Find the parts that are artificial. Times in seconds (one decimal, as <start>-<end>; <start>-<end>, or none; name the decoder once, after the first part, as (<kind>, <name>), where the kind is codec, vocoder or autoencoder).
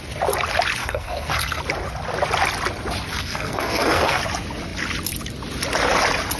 0.8-1.6 (codec, SNAC); 3.1-4.2